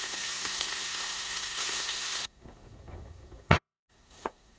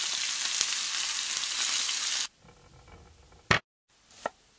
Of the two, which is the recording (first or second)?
second